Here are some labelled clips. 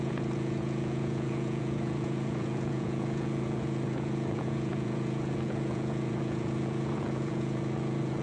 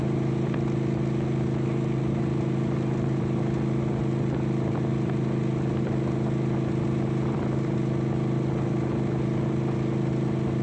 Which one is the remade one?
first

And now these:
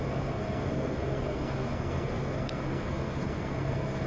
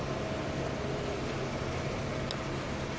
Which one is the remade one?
first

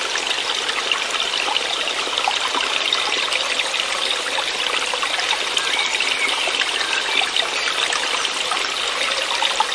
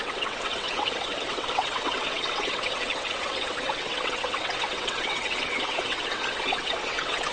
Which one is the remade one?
second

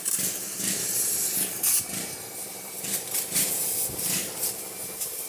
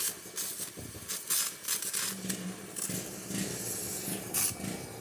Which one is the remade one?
first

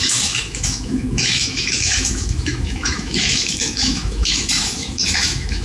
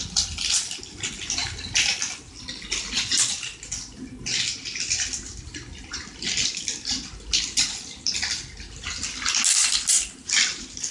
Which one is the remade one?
first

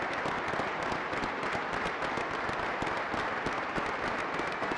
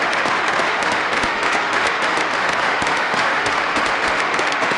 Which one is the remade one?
second